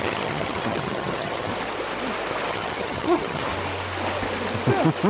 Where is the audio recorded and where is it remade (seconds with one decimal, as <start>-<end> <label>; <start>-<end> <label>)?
0.0-1.5 remade; 1.5-2.5 recorded; 2.5-3.5 remade; 3.5-5.1 recorded